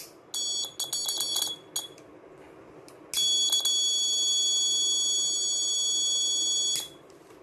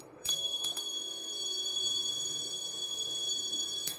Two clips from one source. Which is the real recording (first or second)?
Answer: first